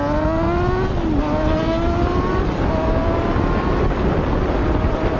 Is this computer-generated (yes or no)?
no